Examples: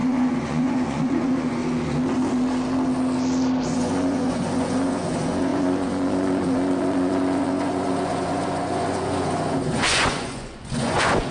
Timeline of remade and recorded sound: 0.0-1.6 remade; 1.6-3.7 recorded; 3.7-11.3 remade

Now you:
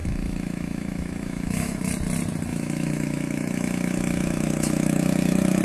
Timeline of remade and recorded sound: 0.0-1.9 remade; 1.9-2.5 recorded; 2.5-5.6 remade

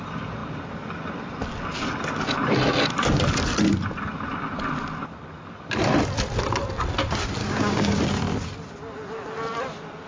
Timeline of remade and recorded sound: 0.0-7.4 recorded; 7.4-8.0 remade; 8.0-10.1 recorded

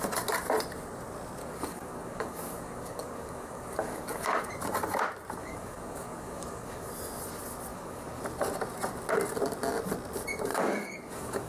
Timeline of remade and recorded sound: 0.0-1.4 recorded; 1.4-4.5 remade; 4.5-5.4 recorded; 5.4-6.9 remade; 6.9-7.7 recorded; 7.7-8.2 remade; 8.2-10.5 recorded; 10.5-11.5 remade

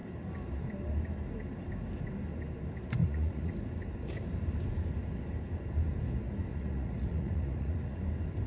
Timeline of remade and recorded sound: 0.0-3.0 recorded; 3.0-3.5 remade; 3.5-6.5 recorded; 6.5-8.0 remade; 8.0-8.5 recorded